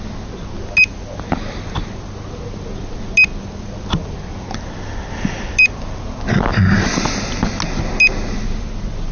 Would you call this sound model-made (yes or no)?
no